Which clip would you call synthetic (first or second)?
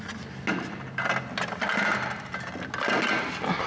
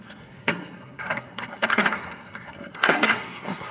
second